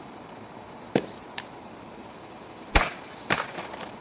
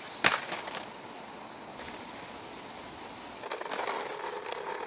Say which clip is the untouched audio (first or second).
second